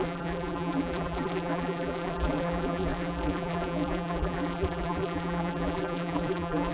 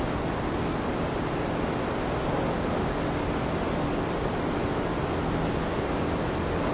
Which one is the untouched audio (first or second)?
second